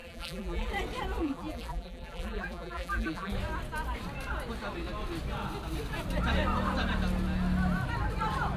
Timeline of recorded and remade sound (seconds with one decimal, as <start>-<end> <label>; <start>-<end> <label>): 0.0-0.7 remade; 0.7-1.2 recorded; 1.2-3.3 remade; 3.3-8.6 recorded